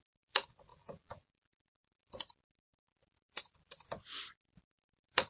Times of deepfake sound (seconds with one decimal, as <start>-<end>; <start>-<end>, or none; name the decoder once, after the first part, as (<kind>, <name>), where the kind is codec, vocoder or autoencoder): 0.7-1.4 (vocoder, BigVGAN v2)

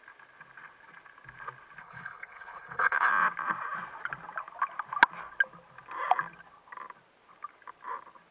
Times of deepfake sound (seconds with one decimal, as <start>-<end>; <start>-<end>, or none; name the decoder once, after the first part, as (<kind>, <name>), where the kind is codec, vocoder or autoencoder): 1.8-3.1 (codec, HILCodec)

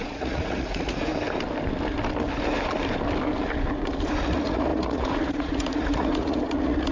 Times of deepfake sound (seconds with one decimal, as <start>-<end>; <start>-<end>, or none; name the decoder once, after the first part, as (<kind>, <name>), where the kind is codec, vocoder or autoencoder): 0.0-1.1 (vocoder, Vocos); 4.2-6.9

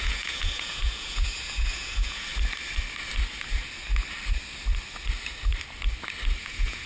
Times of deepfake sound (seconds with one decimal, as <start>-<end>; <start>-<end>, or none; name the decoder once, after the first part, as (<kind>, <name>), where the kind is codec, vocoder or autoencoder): 0.0-2.3 (vocoder, Vocos); 6.4-6.9

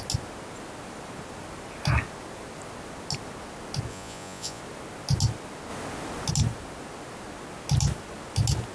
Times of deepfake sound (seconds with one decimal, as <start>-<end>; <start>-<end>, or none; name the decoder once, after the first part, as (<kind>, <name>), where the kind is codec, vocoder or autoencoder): 3.9-4.6 (vocoder, Vocos)

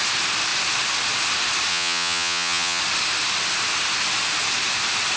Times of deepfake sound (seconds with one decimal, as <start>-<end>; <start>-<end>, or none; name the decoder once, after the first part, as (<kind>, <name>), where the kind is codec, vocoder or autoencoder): 1.7-2.8 (vocoder, HiFi-GAN)